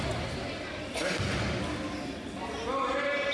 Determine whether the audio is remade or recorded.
recorded